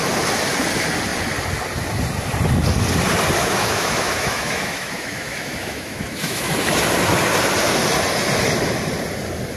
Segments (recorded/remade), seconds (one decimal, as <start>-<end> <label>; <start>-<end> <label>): 0.0-3.4 recorded; 3.4-6.5 remade; 6.5-9.6 recorded